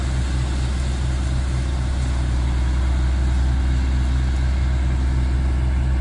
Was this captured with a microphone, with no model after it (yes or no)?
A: yes